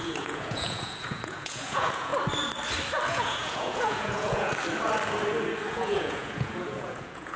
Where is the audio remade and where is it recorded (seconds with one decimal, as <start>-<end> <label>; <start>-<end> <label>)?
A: 0.0-2.1 remade; 2.1-3.1 recorded; 3.1-4.5 remade; 4.5-5.7 recorded; 5.7-7.4 remade

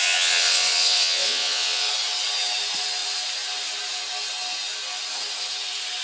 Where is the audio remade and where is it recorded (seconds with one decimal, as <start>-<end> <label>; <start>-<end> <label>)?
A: 0.0-1.9 remade; 1.9-6.0 recorded